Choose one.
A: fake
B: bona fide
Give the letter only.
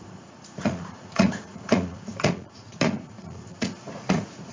A